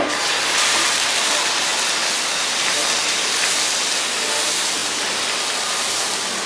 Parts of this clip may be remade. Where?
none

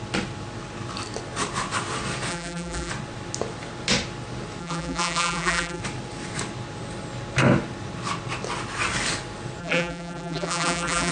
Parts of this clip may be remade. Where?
2.3-2.9 (vocoder, BigVGAN v2); 4.6-5.8; 9.6-11.1